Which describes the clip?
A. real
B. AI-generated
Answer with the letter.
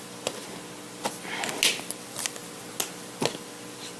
A